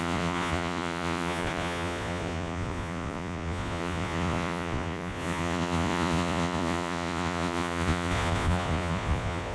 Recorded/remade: remade